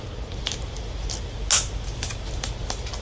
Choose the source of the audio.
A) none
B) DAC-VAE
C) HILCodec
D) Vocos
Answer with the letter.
A